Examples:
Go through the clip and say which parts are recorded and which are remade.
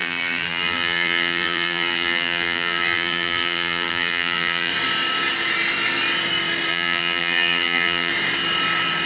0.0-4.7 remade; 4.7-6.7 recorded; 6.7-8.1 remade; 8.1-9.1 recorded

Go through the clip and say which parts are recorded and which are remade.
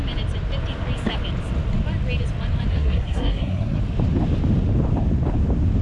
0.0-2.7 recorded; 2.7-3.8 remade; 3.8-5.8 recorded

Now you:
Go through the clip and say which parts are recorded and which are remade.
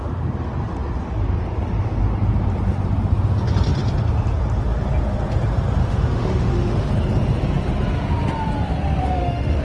0.0-5.8 recorded; 5.8-6.9 remade; 6.9-9.0 recorded; 9.0-9.6 remade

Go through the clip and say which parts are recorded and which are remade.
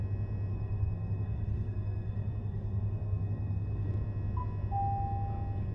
0.0-0.5 recorded; 0.5-3.9 remade; 3.9-5.7 recorded